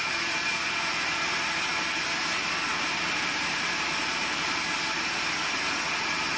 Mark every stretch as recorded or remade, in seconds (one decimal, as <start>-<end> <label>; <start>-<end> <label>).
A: 0.0-2.7 recorded; 2.7-4.6 remade; 4.6-6.4 recorded